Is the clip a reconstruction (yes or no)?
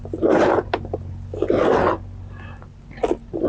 no